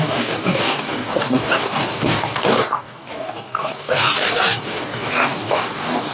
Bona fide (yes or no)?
no